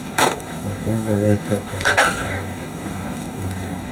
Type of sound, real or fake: fake